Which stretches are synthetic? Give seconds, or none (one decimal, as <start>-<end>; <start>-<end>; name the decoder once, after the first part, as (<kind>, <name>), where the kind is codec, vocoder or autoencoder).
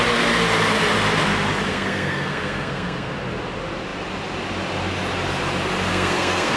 1.7-3.1 (codec, SNAC); 5.9-6.6